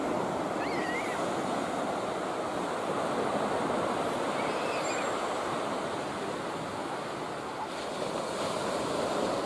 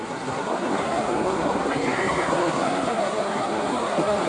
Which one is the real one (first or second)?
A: first